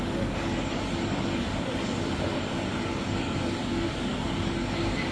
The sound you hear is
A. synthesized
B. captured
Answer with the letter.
A